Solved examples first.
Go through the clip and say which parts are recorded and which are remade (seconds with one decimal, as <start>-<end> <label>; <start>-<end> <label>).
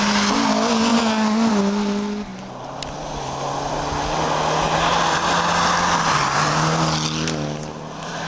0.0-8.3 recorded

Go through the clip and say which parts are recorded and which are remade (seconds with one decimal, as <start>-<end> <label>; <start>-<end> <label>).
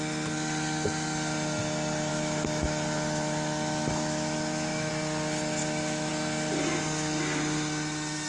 0.0-2.1 recorded; 2.1-4.9 remade; 4.9-5.6 recorded; 5.6-6.1 remade; 6.1-8.3 recorded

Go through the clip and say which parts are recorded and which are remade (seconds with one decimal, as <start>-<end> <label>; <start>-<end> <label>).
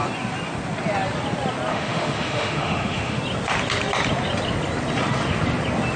0.0-1.7 recorded; 1.7-3.2 remade; 3.2-6.0 recorded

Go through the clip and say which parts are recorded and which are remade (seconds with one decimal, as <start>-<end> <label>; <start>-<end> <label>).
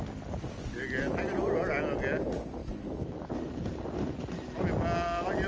0.0-2.6 recorded; 2.6-3.3 remade; 3.3-5.5 recorded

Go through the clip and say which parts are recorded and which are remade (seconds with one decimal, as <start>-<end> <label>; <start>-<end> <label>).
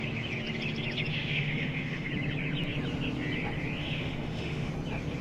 0.0-1.1 recorded; 1.1-2.1 remade; 2.1-3.8 recorded; 3.8-4.7 remade; 4.7-5.2 recorded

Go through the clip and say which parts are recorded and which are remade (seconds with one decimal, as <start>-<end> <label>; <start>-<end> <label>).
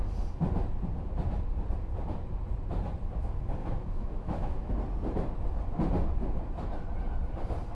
0.0-3.6 recorded; 3.6-4.7 remade; 4.7-7.7 recorded